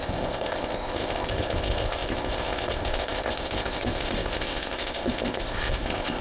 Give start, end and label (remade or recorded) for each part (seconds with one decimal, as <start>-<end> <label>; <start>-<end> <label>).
0.0-6.2 remade